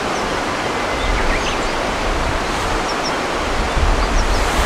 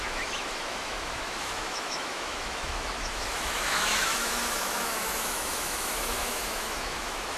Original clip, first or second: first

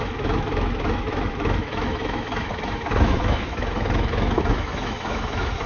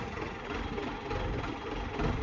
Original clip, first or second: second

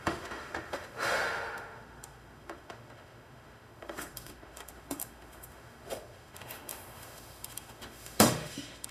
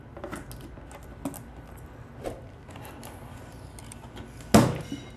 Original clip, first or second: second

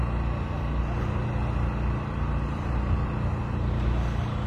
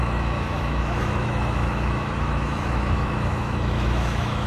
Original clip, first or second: first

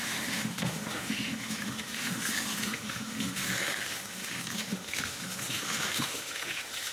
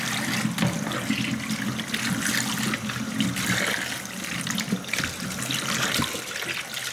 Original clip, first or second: second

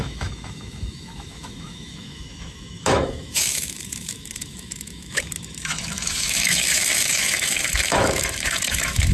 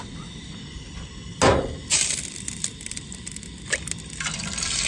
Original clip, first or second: second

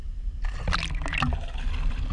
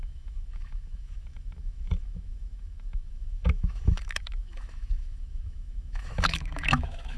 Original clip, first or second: first